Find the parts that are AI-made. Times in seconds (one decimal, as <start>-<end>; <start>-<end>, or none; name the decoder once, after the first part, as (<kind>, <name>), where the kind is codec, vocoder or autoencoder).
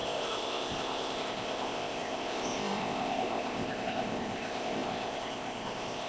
0.0-6.1 (codec, ZipCodec)